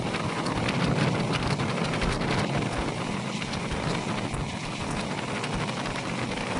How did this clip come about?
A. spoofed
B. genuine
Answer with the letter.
B